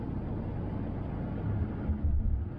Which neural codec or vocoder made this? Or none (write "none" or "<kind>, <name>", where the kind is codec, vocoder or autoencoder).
none